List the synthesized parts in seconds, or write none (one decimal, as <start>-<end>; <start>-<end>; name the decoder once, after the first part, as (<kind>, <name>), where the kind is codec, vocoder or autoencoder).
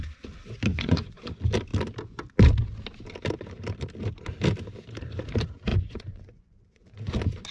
0.7-1.2 (vocoder, Vocos); 5.7-7.1